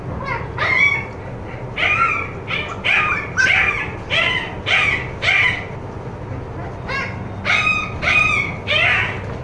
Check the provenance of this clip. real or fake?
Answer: real